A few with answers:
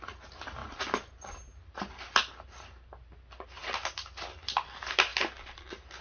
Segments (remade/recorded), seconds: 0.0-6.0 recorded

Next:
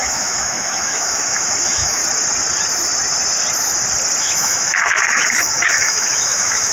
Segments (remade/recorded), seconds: 0.0-2.0 remade; 2.0-4.2 recorded; 4.2-6.7 remade